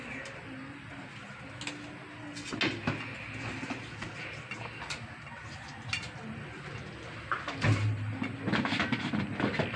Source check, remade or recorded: recorded